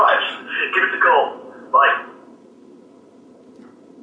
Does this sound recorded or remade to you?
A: remade